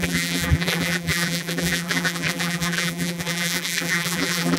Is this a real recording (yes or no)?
no